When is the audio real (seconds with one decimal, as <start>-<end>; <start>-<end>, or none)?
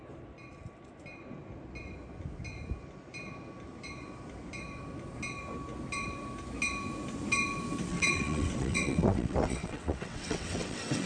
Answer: 0.0-7.9